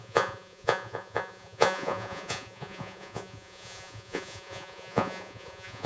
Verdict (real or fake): fake